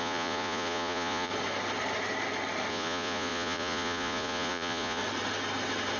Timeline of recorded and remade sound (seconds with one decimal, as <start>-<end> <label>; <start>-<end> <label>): 0.0-1.3 remade; 1.3-2.7 recorded; 2.7-5.0 remade; 5.0-6.0 recorded